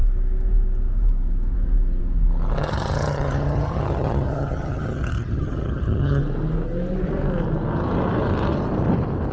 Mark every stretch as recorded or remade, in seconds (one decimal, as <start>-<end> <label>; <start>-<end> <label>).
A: 0.0-2.6 recorded; 2.6-6.2 remade; 6.2-9.3 recorded

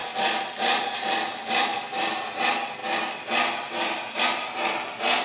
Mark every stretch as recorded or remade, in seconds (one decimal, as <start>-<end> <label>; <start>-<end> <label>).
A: 0.0-5.2 recorded

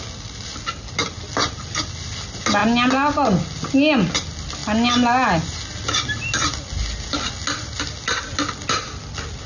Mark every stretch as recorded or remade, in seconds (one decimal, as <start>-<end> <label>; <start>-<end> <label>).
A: 0.0-9.5 recorded

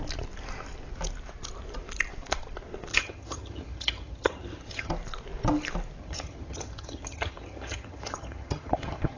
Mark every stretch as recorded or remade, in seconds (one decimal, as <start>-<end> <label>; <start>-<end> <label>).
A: 0.0-2.9 recorded; 2.9-4.9 remade; 4.9-6.0 recorded; 6.0-9.2 remade

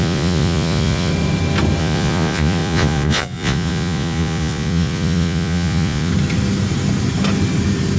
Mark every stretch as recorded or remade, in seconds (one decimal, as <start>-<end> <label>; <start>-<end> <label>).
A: 0.0-1.1 remade; 1.1-1.8 recorded; 1.8-6.1 remade; 6.1-8.0 recorded

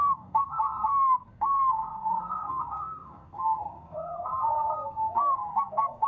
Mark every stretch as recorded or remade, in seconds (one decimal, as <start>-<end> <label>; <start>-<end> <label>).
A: 0.0-6.1 remade